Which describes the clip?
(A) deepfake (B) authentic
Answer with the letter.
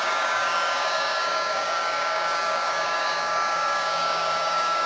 A